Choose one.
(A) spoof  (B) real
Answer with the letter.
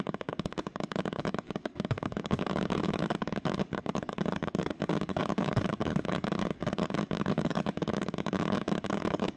A